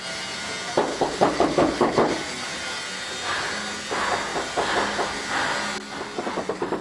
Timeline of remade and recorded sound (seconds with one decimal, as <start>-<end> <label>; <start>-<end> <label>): 0.0-0.9 recorded; 0.9-2.1 remade; 2.1-6.8 recorded